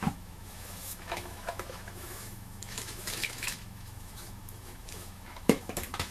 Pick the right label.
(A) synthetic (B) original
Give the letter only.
A